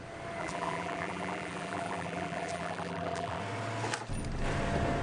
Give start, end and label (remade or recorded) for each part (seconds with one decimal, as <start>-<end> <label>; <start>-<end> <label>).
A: 0.0-0.4 recorded; 0.4-3.4 remade; 3.4-5.0 recorded